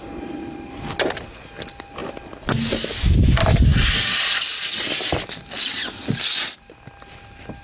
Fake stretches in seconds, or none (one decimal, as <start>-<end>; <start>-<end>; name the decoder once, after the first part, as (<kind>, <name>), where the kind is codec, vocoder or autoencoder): none